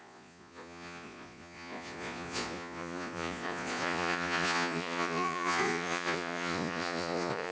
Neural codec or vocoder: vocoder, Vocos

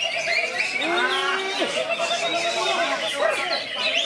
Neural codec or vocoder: none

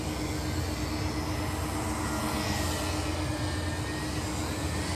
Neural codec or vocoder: none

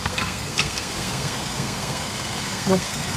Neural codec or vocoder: codec, SNAC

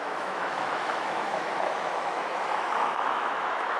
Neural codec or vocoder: autoencoder, DAC-VAE